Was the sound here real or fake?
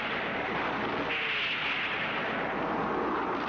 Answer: real